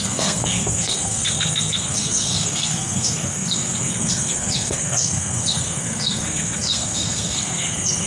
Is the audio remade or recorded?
remade